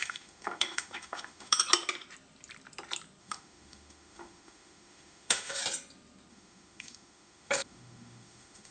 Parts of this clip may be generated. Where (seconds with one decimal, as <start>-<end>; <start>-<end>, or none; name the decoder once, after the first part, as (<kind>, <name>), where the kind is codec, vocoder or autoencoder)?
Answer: 0.0-1.6 (autoencoder, DAC-VAE); 3.2-5.6; 6.3-8.7